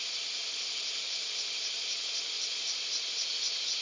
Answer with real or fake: real